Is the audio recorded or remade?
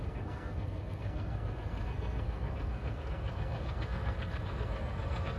remade